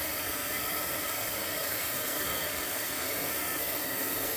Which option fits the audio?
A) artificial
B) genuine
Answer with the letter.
A